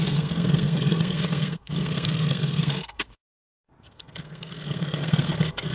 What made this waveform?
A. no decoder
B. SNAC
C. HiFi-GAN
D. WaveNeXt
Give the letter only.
B